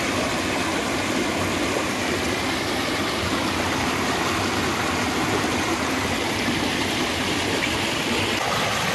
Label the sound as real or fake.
real